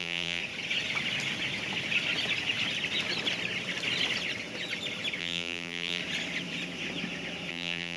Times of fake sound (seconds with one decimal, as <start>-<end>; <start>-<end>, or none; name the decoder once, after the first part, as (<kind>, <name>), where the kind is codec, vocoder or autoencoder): 0.0-0.4 (vocoder, BigVGAN v2); 5.2-6.0; 7.5-8.0